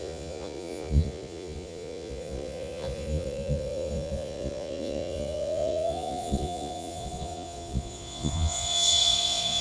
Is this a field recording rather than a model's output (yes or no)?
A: no